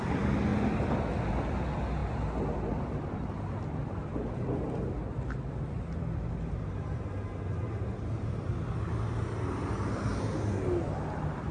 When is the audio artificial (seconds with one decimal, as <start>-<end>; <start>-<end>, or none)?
none